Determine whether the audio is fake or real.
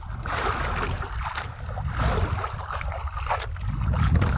real